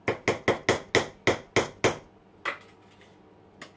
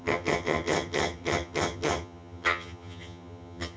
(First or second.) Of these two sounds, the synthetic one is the second